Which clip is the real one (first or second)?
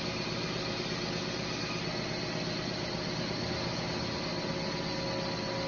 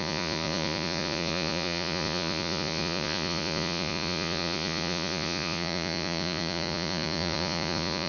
first